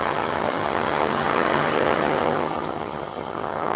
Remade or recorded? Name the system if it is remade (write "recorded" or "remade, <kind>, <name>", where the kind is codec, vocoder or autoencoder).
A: remade, vocoder, HiFi-GAN